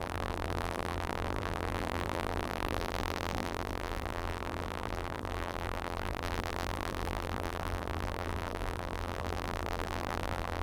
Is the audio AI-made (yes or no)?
yes